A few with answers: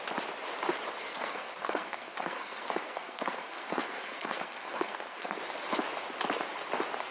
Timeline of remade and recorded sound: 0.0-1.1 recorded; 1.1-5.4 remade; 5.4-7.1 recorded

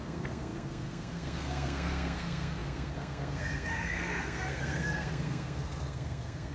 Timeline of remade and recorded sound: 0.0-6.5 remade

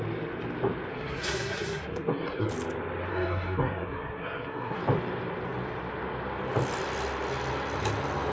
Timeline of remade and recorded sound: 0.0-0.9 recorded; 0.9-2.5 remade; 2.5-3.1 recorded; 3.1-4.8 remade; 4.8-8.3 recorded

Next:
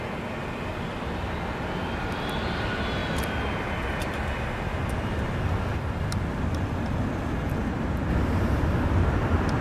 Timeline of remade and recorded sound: 0.0-9.6 recorded

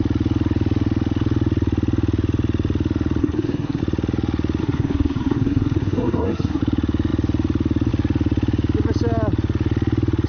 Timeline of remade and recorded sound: 0.0-3.2 recorded; 3.2-3.8 remade; 3.8-4.6 recorded; 4.6-6.6 remade; 6.6-10.3 recorded

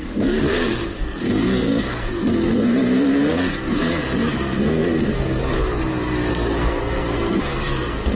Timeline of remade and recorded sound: 0.0-5.4 remade; 5.4-6.3 recorded; 6.3-8.1 remade

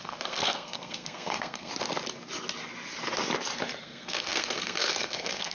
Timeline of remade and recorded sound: 0.0-1.7 remade; 1.7-3.8 recorded; 3.8-5.5 remade

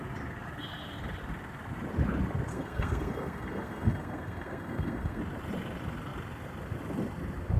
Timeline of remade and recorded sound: 0.0-2.5 recorded; 2.5-5.2 remade; 5.2-7.6 recorded